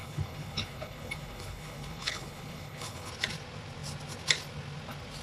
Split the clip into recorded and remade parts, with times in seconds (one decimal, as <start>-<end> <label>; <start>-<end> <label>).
0.0-3.1 remade; 3.1-5.2 recorded